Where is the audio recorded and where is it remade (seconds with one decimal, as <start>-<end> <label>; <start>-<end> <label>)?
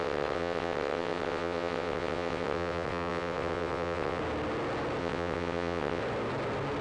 0.0-4.2 remade; 4.2-5.0 recorded; 5.0-6.0 remade; 6.0-6.8 recorded